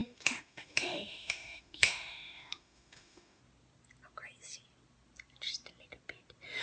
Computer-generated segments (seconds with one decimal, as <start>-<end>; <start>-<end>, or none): 0.0-3.4